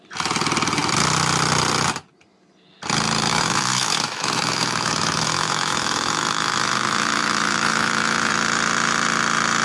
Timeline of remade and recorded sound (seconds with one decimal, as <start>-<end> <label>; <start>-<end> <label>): 0.0-3.3 recorded; 3.3-8.3 remade; 8.3-9.6 recorded